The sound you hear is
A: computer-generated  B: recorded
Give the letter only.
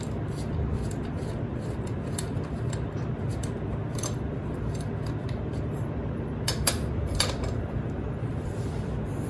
A